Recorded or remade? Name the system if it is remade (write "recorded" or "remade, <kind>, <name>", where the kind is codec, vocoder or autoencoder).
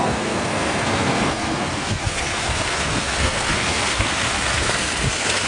remade, codec, SNAC